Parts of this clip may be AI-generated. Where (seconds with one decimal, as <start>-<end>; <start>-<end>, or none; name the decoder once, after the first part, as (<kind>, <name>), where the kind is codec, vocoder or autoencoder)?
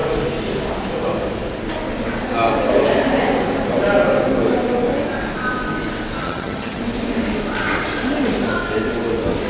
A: 6.2-6.8 (vocoder, HiFi-GAN)